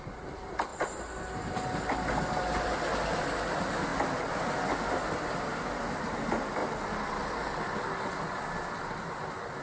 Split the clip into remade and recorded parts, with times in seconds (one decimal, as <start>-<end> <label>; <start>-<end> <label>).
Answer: 0.0-9.6 recorded